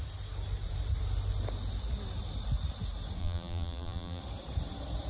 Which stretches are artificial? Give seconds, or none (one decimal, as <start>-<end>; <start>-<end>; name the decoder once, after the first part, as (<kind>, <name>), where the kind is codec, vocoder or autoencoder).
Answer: 3.2-4.2 (vocoder, BigVGAN v2)